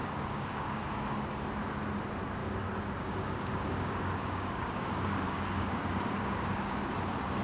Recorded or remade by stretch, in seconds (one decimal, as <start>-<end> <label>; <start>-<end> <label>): 0.0-0.8 remade; 0.8-2.4 recorded; 2.4-6.8 remade; 6.8-7.4 recorded